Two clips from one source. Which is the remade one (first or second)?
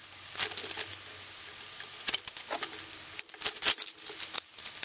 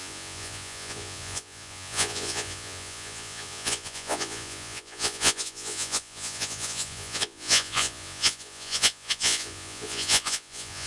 second